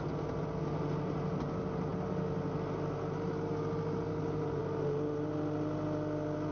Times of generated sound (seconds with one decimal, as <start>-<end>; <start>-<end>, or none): none